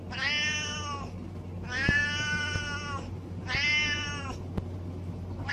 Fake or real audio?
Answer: real